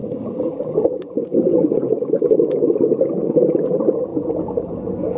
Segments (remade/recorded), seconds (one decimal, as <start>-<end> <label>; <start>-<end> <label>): 0.0-0.5 recorded; 0.5-1.2 remade; 1.2-3.1 recorded; 3.1-5.2 remade